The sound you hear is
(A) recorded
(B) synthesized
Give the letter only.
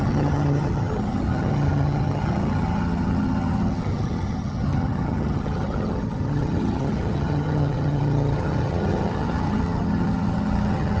B